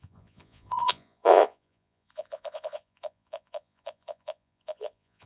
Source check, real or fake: fake